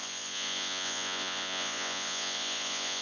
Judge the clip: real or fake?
fake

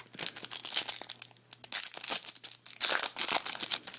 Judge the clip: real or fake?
real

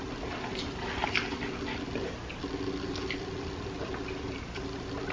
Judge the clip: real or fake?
real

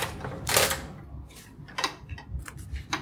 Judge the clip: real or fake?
real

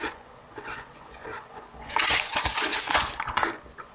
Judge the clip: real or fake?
fake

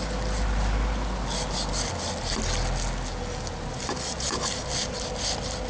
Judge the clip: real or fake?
real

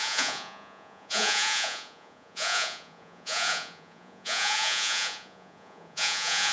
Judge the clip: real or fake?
fake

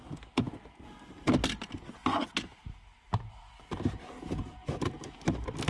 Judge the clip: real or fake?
real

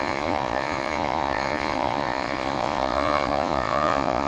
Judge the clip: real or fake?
fake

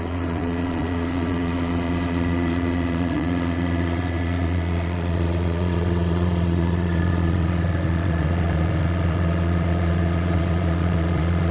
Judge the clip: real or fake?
fake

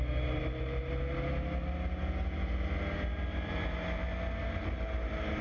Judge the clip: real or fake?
real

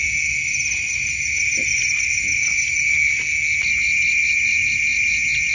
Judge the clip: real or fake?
real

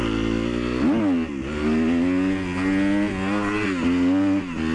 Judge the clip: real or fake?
real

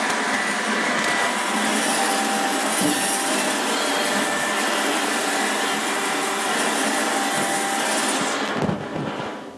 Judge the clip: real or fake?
real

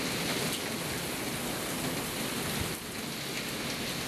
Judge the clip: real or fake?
real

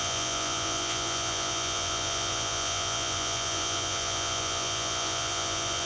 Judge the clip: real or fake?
fake